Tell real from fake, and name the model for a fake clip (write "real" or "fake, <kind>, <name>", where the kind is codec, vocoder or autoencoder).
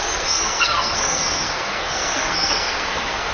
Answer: fake, codec, SNAC